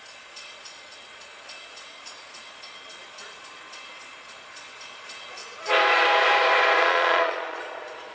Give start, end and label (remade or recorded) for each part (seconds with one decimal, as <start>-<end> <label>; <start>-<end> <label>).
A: 0.0-5.4 remade; 5.4-6.8 recorded; 6.8-8.1 remade